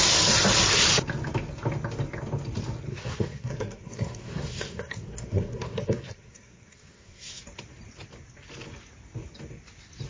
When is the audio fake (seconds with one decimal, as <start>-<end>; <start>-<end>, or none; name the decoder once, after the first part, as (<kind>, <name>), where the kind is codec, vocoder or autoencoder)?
2.9-7.4 (codec, SNAC)